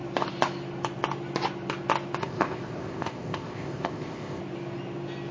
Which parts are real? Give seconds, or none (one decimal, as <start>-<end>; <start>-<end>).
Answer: 0.0-2.2; 4.4-5.3